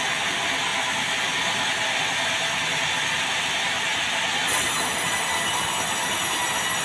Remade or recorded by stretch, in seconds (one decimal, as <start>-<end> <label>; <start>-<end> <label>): 0.0-6.8 recorded